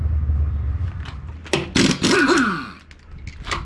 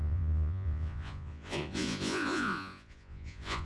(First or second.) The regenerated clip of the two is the second